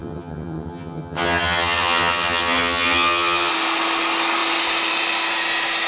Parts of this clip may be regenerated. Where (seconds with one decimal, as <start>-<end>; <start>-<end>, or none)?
0.0-3.5